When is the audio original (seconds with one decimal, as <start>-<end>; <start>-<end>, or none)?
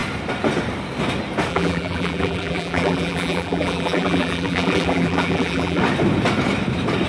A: 0.0-1.5; 5.8-7.1